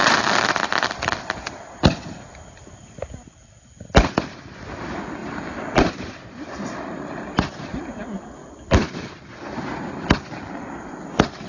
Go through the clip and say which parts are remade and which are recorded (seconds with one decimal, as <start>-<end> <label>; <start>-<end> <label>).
0.0-0.5 remade; 0.5-5.2 recorded; 5.2-8.0 remade; 8.0-8.4 recorded; 8.4-9.2 remade; 9.2-11.5 recorded

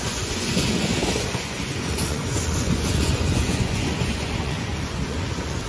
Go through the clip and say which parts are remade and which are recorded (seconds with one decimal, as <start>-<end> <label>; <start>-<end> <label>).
0.0-5.7 remade